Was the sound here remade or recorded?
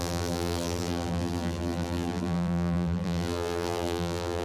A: remade